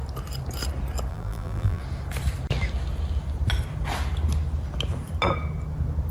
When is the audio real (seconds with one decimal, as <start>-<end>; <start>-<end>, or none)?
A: 0.0-1.1; 1.8-6.1